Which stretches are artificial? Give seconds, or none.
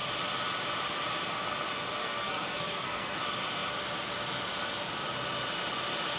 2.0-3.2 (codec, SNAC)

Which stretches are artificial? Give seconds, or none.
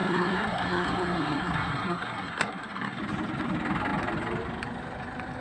0.0-3.0 (codec, SNAC)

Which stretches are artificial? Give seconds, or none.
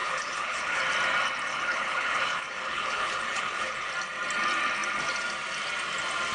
0.0-0.8 (codec, HILCodec); 1.5-3.9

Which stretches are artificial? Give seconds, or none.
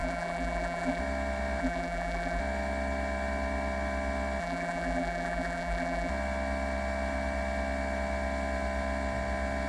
0.0-1.0 (vocoder, BigVGAN v2); 1.6-2.4; 4.4-6.1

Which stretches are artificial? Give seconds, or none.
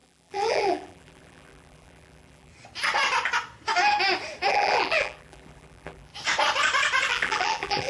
0.0-2.5 (vocoder, BigVGAN v2); 4.5-6.1; 7.1-7.9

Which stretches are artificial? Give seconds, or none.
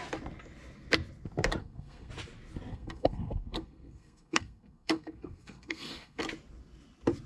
1.6-2.1 (codec, SNAC); 2.7-6.2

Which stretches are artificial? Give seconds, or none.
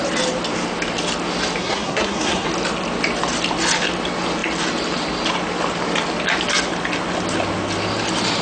1.6-2.5 (codec, SNAC)